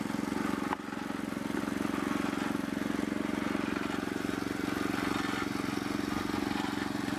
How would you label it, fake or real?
real